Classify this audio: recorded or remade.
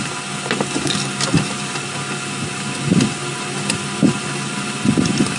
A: recorded